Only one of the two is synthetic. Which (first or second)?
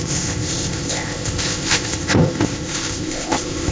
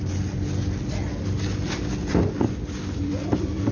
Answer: first